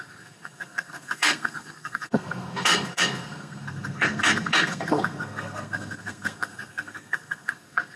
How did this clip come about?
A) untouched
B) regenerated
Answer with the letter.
B